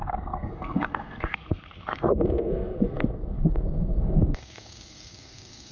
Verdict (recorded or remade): remade